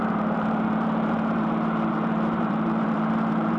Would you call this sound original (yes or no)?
no